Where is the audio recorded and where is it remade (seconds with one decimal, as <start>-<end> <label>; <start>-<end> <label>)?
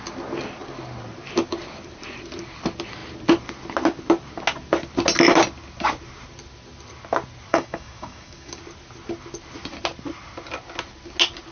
0.0-7.5 recorded; 7.5-8.6 remade; 8.6-11.5 recorded